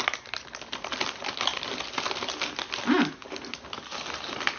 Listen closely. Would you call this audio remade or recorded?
recorded